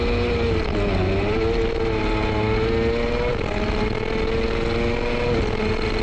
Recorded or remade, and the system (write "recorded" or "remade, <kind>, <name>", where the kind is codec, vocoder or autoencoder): recorded